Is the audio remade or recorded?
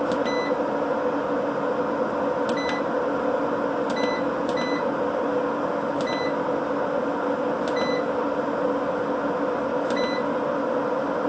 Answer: recorded